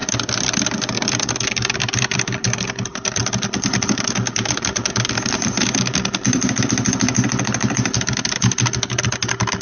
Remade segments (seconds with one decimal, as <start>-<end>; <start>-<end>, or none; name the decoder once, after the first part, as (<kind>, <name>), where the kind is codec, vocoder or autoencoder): 3.2-4.5 (vocoder, BigVGAN v2)